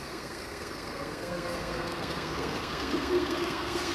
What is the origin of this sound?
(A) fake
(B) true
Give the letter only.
A